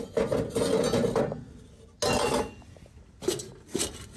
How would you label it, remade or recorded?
recorded